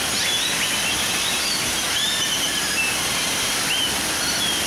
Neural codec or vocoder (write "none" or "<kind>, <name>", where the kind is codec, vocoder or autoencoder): none